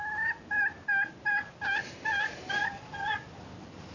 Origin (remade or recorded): recorded